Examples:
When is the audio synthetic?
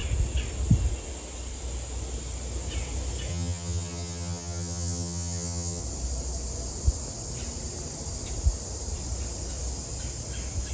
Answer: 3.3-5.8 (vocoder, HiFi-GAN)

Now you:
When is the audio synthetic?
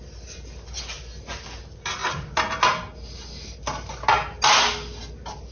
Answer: none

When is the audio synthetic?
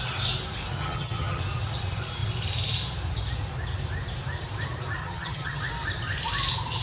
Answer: 0.8-1.4 (vocoder, HiFi-GAN); 5.0-5.6